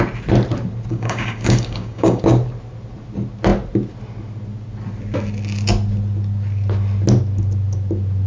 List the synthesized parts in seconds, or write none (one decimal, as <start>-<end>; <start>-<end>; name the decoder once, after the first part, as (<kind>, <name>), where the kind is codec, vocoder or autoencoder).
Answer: 0.9-2.2 (codec, DAC)

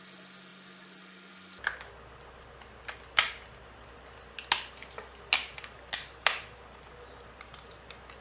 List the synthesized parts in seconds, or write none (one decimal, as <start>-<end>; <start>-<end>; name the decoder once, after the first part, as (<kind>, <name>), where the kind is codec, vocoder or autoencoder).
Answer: none

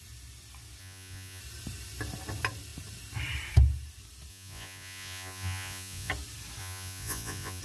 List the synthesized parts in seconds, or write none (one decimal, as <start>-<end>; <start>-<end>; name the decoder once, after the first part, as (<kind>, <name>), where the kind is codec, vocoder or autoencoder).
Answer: 0.8-1.4 (vocoder, Vocos); 4.3-6.1; 6.6-7.6

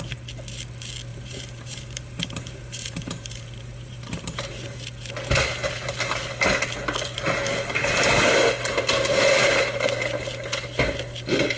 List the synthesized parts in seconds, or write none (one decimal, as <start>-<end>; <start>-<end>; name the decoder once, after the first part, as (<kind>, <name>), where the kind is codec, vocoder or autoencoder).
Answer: 1.1-4.5 (vocoder, BigVGAN v2)

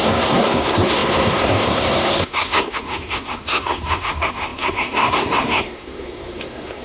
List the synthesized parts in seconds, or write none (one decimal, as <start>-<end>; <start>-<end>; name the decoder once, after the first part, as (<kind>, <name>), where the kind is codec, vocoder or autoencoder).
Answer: 0.0-6.8 (codec, SNAC)

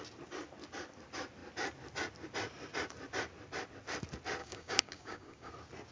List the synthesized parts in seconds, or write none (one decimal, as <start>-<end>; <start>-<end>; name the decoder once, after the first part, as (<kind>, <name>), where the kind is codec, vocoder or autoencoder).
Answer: 4.4-5.5 (codec, DAC)

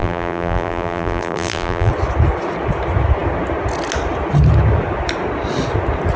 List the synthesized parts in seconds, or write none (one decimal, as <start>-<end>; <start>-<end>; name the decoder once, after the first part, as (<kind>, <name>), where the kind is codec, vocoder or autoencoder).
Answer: 0.0-1.9 (vocoder, BigVGAN v2)